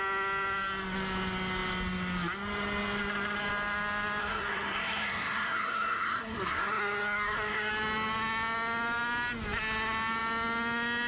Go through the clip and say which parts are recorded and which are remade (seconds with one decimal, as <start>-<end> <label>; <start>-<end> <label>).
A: 0.0-4.2 recorded; 4.2-7.7 remade; 7.7-11.1 recorded